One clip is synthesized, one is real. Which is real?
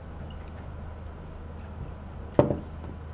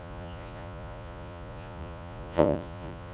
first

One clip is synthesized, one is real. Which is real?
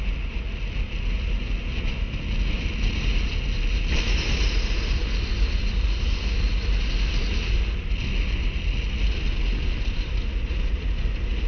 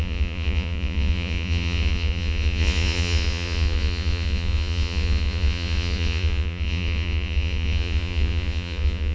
first